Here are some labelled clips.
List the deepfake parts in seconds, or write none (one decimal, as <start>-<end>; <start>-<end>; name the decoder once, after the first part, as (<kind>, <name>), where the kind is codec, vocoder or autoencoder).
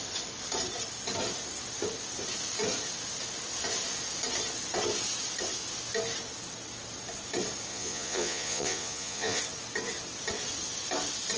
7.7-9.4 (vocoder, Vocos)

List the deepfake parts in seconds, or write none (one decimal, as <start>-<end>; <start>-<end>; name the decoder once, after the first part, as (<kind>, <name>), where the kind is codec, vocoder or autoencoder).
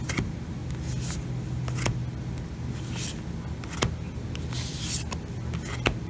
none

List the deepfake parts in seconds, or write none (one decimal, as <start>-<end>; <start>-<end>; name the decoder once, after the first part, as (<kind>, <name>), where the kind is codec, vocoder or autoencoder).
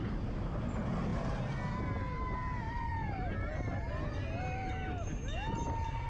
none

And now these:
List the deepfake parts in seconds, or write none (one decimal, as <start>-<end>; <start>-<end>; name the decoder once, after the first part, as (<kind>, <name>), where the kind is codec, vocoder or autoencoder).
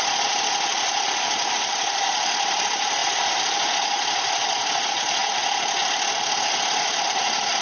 none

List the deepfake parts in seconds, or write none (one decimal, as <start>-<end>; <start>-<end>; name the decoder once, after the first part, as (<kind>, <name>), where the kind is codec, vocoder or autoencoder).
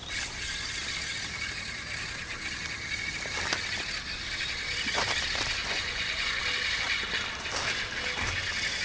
5.6-6.4 (vocoder, Vocos)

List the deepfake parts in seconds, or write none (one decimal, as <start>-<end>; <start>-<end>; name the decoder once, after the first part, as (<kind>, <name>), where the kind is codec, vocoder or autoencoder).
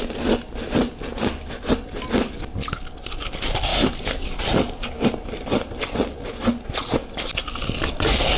none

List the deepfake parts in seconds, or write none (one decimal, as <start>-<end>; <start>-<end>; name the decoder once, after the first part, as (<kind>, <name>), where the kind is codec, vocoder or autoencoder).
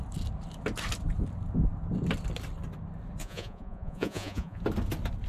3.2-4.6 (vocoder, Vocos)